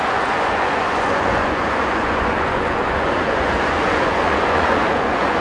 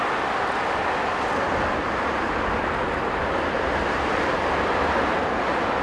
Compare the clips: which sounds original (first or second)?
second